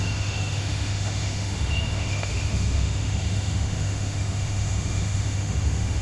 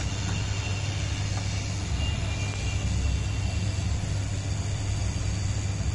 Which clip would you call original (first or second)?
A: second